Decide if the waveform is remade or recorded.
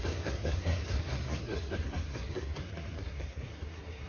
remade